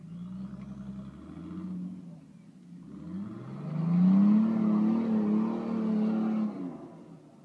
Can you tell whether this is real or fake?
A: real